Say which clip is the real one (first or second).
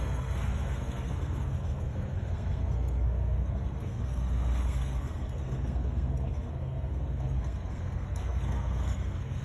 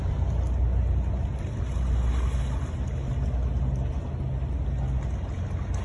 second